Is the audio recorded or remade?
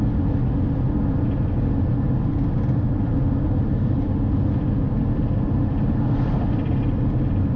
recorded